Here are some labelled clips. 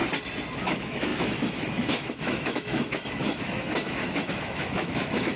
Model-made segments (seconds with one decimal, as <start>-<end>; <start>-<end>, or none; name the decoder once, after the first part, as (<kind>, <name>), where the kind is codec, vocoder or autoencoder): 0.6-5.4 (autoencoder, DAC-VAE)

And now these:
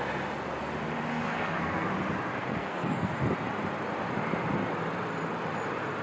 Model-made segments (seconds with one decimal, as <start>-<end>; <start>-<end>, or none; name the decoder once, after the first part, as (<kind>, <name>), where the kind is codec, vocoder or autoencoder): 1.1-1.9 (codec, SNAC); 2.4-3.1

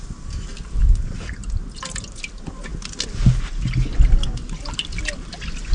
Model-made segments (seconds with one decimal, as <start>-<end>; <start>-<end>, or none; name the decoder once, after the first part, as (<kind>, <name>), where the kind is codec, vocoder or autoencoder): none

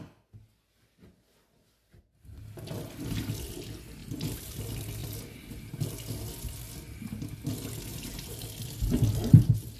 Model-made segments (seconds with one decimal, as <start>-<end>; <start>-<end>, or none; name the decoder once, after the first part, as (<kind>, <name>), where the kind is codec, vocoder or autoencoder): 4.0-4.6 (vocoder, BigVGAN v2); 7.9-8.4